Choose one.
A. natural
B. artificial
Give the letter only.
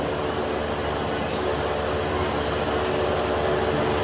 A